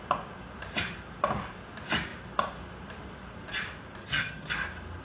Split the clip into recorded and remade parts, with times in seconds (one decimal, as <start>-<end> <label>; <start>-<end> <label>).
0.0-4.0 recorded; 4.0-4.5 remade; 4.5-5.0 recorded

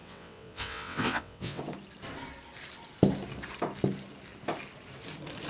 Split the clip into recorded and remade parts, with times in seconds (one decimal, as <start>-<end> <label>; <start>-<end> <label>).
0.0-1.6 remade; 1.6-5.5 recorded

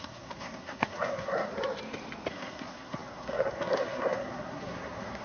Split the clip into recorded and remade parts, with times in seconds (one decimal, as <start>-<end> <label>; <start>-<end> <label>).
0.0-1.5 remade; 1.5-2.3 recorded; 2.3-5.2 remade

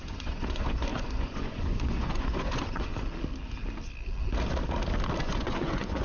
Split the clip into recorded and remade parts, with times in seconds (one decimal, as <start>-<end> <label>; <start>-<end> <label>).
0.0-2.9 remade; 2.9-5.2 recorded; 5.2-6.0 remade